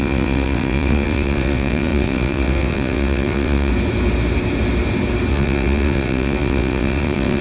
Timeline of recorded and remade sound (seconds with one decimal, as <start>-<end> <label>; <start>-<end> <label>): 0.0-3.7 remade; 3.7-5.3 recorded; 5.3-7.4 remade